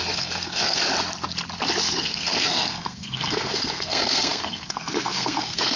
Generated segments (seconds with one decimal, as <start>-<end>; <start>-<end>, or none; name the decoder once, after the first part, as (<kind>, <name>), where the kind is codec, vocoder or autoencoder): 0.0-0.8 (codec, SNAC); 1.8-5.8